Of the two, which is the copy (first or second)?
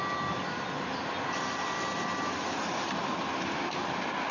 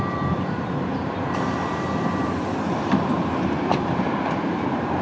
second